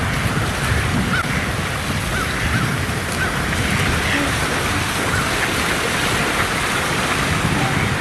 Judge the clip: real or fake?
real